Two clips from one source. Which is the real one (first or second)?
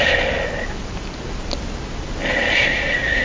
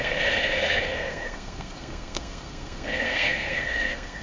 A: first